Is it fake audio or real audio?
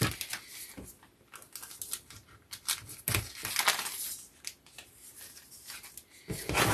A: real